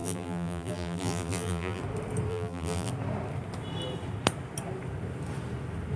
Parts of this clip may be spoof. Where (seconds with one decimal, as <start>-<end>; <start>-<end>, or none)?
0.0-1.8; 2.3-2.9